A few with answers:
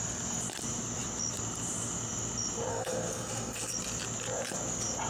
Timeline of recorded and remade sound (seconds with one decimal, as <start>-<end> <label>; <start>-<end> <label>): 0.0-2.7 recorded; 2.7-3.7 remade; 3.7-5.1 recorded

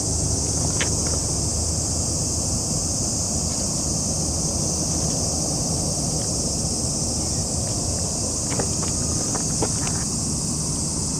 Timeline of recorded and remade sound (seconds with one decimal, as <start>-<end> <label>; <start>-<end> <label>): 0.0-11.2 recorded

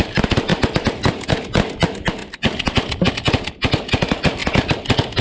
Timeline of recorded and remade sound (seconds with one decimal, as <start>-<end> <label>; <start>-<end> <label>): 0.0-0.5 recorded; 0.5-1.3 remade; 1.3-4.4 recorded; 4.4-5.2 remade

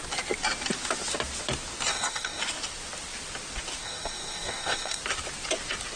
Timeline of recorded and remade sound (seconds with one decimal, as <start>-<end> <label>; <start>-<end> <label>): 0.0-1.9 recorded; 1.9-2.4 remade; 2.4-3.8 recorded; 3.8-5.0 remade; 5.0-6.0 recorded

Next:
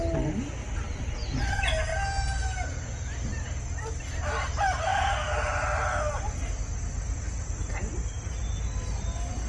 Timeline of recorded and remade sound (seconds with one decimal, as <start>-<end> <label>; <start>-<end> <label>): 0.0-9.5 recorded

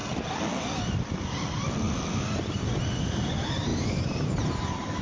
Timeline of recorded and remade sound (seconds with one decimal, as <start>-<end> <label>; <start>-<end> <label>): 0.0-3.0 recorded; 3.0-5.0 remade

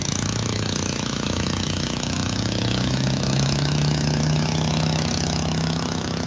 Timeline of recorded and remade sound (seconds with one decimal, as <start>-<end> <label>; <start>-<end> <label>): 0.0-6.3 remade

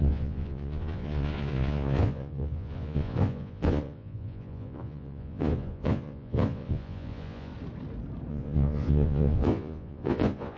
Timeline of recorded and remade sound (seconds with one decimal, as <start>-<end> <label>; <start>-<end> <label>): 0.0-7.5 remade; 7.5-8.3 recorded; 8.3-10.6 remade